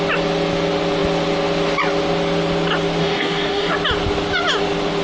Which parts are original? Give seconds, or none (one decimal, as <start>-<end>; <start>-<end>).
0.0-3.0; 3.7-5.0